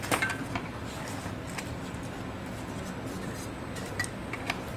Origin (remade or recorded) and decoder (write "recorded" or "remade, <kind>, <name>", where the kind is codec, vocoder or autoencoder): recorded